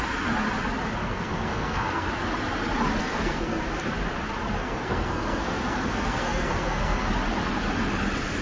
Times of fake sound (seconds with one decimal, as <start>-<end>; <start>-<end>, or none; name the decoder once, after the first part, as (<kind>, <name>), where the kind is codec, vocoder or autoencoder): 1.0-2.1 (codec, SNAC); 3.0-3.6; 4.6-7.1